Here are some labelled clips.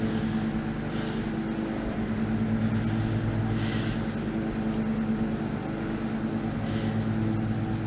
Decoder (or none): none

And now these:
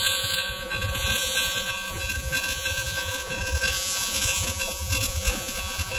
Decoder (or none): vocoder, Vocos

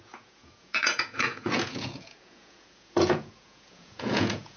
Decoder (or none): vocoder, Vocos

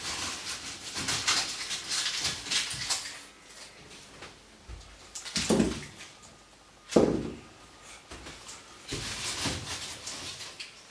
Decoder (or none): none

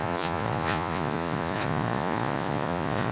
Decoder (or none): vocoder, Vocos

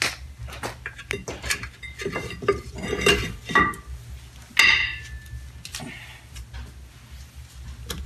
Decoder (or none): none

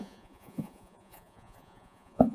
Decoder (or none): vocoder, Vocos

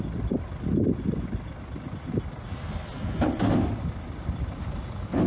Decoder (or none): none